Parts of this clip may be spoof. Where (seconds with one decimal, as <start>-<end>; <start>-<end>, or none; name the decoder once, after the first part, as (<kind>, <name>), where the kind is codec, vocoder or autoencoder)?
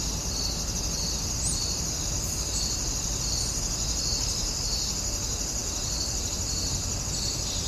none